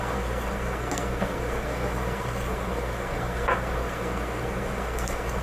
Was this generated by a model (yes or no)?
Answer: yes